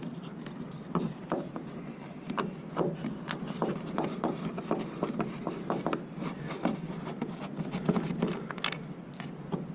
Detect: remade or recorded recorded